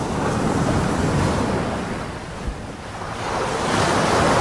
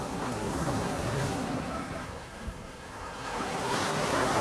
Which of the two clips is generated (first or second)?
second